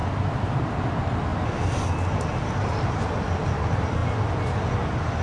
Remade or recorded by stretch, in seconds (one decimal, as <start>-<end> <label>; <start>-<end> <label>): 0.0-5.2 recorded